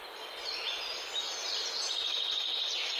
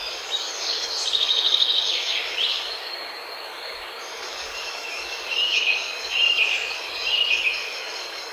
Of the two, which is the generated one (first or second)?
second